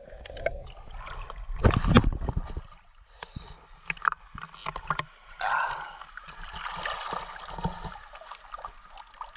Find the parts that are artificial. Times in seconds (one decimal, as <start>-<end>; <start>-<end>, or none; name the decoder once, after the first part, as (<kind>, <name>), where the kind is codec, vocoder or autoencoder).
none